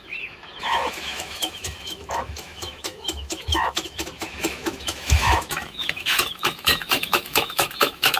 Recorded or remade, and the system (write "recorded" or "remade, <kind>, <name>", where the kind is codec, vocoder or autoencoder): remade, autoencoder, DAC-VAE